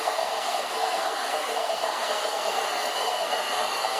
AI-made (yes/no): yes